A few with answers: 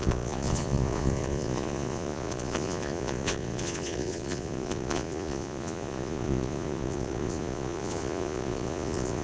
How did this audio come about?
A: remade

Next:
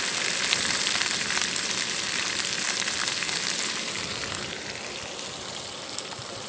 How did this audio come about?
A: remade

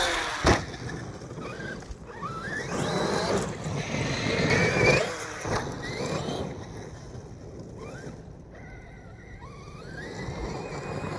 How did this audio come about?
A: recorded